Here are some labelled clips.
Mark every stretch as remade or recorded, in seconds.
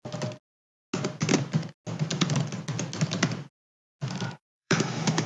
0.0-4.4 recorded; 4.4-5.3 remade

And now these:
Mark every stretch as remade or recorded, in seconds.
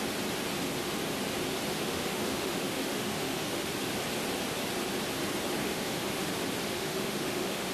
0.0-1.7 recorded; 1.7-3.7 remade; 3.7-5.6 recorded; 5.6-6.3 remade; 6.3-6.7 recorded; 6.7-7.7 remade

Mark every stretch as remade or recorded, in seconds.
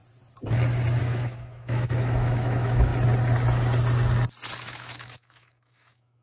0.0-1.0 recorded; 1.0-2.9 remade; 2.9-4.6 recorded; 4.6-6.2 remade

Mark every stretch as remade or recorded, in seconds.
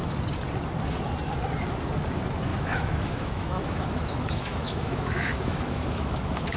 0.0-2.5 recorded; 2.5-6.6 remade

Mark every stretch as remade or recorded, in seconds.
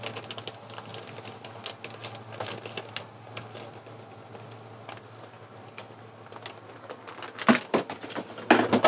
0.0-8.9 recorded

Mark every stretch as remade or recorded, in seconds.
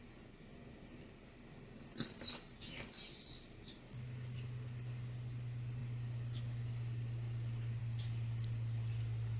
0.0-9.4 recorded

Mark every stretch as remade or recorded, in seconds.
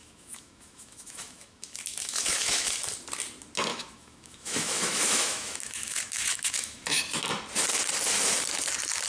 0.0-2.7 remade; 2.7-3.7 recorded; 3.7-7.2 remade; 7.2-9.1 recorded